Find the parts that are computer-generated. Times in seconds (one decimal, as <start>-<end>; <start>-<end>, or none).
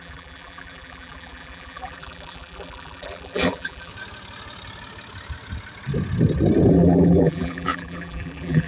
0.0-3.9; 6.7-8.7